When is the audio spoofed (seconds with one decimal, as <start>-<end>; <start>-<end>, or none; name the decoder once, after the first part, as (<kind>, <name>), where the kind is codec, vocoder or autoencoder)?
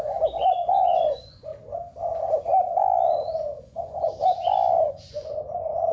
0.0-1.5 (vocoder, Vocos); 3.6-4.1; 4.8-5.9